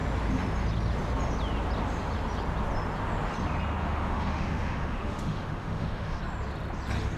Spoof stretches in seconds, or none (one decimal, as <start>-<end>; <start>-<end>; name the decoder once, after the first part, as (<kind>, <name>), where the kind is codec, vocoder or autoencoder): 3.8-6.2 (autoencoder, DAC-VAE)